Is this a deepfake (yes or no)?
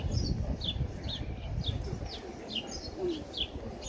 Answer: yes